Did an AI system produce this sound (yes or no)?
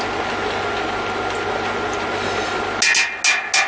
no